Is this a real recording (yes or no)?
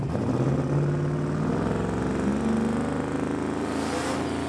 yes